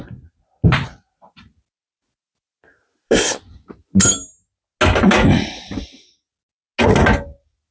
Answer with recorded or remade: recorded